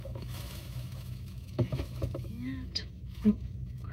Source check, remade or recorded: remade